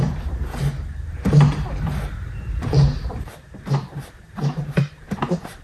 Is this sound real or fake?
fake